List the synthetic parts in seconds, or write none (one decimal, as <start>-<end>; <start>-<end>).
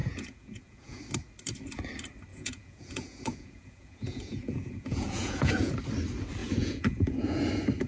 0.0-1.0; 2.3-5.7; 6.4-7.5